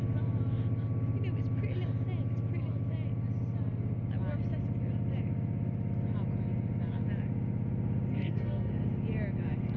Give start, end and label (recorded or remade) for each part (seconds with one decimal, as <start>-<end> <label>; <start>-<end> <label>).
0.0-8.1 recorded; 8.1-8.7 remade; 8.7-9.8 recorded